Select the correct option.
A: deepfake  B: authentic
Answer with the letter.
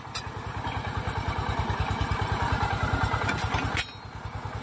B